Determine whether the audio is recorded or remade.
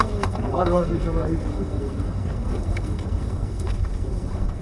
remade